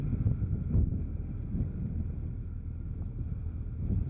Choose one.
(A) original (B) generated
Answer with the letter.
A